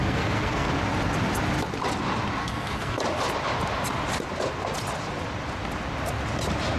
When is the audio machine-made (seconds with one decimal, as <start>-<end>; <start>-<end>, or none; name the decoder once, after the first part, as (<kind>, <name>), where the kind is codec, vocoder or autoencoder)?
0.0-0.7 (codec, SNAC); 2.4-3.0